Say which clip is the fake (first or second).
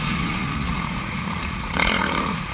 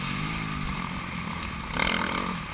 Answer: first